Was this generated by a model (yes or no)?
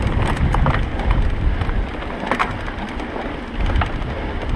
no